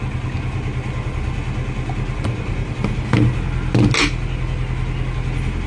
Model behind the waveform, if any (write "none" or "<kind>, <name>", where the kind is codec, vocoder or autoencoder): none